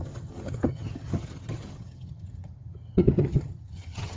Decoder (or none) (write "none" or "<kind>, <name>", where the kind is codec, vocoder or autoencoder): vocoder, HiFi-GAN